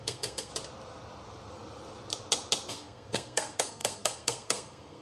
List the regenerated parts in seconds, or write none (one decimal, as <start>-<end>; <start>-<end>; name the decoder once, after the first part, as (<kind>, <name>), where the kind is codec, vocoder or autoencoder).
0.0-0.5 (codec, SNAC); 2.7-5.0